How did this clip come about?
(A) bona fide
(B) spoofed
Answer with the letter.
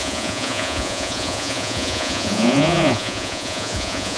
B